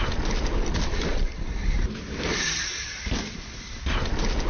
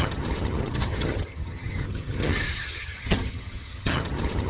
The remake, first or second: second